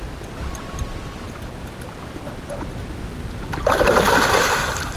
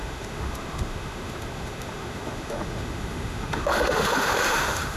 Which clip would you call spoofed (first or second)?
second